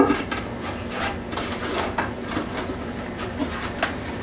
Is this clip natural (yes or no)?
no